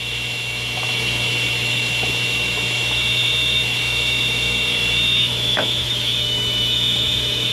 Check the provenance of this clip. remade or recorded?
remade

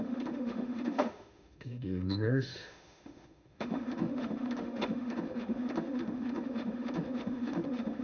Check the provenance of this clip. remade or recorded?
remade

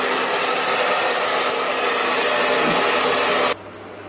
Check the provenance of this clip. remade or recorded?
recorded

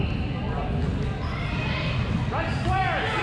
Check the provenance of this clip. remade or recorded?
recorded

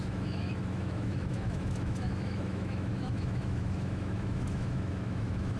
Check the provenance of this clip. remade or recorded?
remade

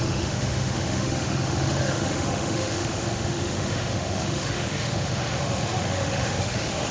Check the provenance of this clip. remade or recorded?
remade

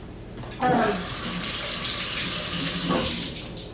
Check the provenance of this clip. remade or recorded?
recorded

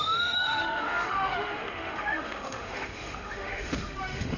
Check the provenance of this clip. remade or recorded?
remade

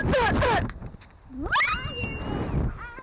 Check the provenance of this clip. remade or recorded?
recorded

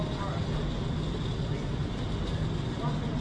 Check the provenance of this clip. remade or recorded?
recorded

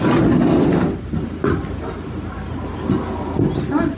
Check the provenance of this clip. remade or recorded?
recorded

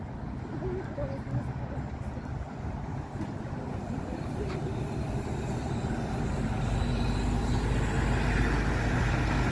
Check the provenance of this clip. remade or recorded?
recorded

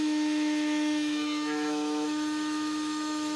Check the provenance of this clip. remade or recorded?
remade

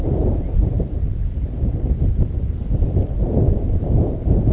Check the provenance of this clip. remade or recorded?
recorded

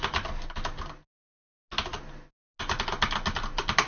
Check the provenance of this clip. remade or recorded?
recorded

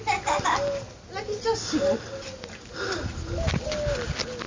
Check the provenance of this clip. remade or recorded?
recorded